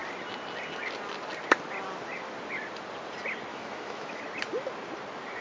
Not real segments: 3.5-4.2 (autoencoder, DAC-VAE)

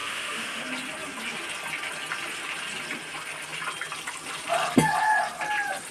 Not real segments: 0.0-0.6 (autoencoder, DAC-VAE)

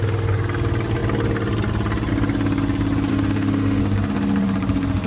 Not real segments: 3.1-3.8 (autoencoder, DAC-VAE)